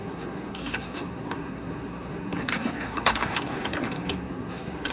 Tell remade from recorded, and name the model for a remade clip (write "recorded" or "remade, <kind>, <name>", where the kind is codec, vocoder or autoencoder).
remade, codec, SNAC